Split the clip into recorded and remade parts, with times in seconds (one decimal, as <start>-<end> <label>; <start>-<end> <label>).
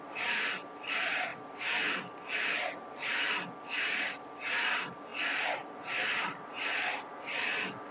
0.0-7.9 recorded